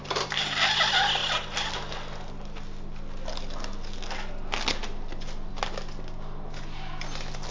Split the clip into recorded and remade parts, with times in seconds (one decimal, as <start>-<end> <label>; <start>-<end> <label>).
0.0-7.5 recorded